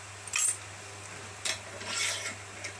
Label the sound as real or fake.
real